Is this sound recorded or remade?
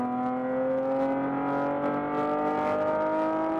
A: recorded